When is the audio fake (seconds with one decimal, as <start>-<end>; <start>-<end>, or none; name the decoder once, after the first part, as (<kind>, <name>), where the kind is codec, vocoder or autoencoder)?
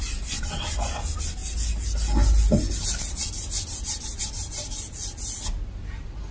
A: none